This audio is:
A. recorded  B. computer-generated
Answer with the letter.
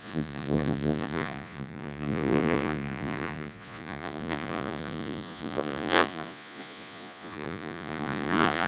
B